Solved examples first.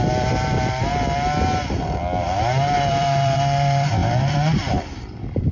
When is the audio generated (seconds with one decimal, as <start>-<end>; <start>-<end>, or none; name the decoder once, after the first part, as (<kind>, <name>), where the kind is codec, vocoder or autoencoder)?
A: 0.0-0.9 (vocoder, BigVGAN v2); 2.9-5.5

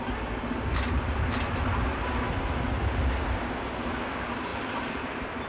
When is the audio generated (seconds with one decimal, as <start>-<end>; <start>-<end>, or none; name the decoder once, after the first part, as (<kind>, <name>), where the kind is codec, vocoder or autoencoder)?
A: none

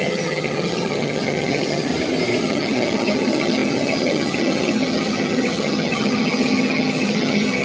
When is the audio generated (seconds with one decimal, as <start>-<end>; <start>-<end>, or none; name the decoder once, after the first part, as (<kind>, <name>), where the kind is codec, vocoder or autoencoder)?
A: 0.0-1.9 (vocoder, HiFi-GAN); 2.4-7.6

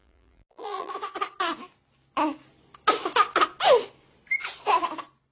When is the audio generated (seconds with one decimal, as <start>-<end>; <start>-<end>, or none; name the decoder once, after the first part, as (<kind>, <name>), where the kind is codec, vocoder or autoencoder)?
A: 0.0-0.9 (vocoder, BigVGAN v2)

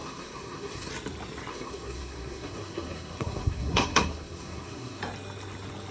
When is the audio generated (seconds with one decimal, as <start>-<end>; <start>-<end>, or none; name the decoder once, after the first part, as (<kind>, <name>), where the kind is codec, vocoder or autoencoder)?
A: 0.0-0.9 (codec, SNAC); 1.5-5.0